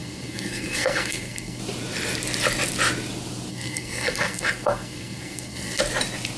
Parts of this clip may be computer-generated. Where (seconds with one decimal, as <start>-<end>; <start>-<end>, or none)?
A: 0.0-1.6; 3.5-5.8